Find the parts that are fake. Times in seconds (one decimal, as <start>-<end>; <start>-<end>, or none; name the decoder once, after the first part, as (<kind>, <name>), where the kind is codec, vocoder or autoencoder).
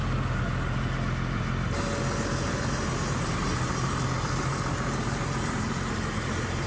2.5-6.7 (vocoder, BigVGAN v2)